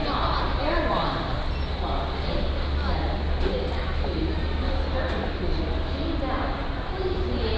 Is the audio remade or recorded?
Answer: recorded